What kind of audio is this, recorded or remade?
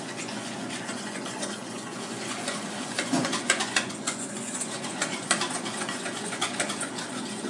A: remade